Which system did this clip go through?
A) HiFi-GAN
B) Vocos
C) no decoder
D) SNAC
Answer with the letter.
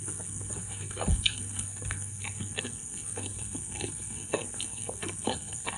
D